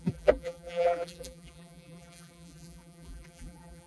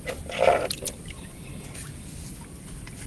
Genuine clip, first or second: second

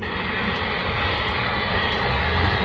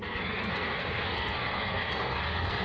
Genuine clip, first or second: first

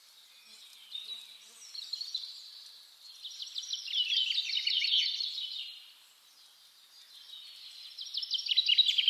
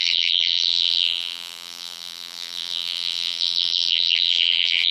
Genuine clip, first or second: first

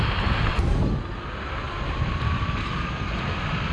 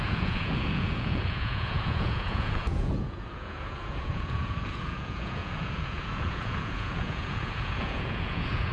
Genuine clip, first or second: first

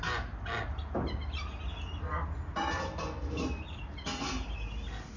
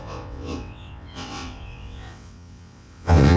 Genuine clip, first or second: first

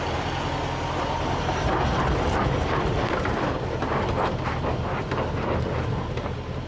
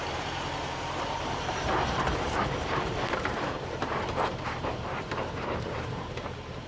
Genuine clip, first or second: first